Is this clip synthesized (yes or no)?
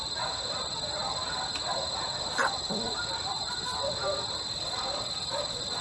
no